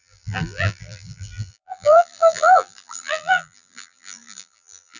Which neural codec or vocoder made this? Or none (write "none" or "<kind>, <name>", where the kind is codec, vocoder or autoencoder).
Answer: vocoder, BigVGAN v2